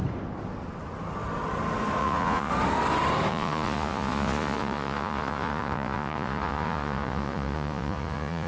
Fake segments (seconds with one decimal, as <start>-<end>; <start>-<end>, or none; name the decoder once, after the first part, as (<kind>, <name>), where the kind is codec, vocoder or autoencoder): 2.0-2.5 (vocoder, Vocos); 3.3-8.5